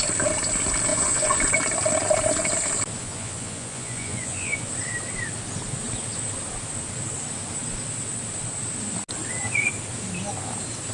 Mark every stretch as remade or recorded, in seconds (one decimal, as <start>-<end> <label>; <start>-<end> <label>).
0.0-0.9 recorded; 0.9-1.4 remade; 1.4-3.0 recorded; 3.0-4.7 remade; 4.7-10.9 recorded